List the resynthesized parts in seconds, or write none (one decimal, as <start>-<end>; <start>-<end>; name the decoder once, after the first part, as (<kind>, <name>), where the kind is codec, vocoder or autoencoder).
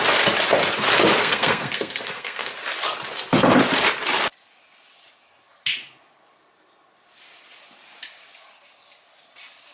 1.2-2.5 (codec, SNAC)